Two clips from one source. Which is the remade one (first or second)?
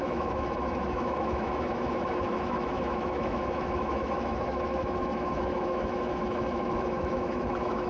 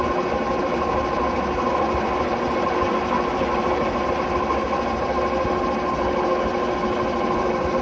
first